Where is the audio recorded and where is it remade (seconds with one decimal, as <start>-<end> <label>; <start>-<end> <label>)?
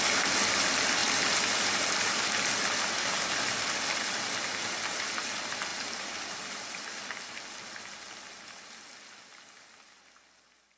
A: 0.0-1.0 recorded; 1.0-2.2 remade; 2.2-10.8 recorded